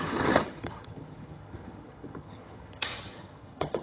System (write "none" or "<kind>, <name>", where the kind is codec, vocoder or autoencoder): vocoder, HiFi-GAN